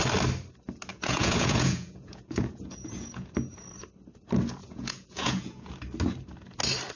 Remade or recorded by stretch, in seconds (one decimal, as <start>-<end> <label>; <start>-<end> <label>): 0.0-0.9 recorded; 0.9-3.3 remade; 3.3-4.6 recorded; 4.6-5.7 remade; 5.7-7.0 recorded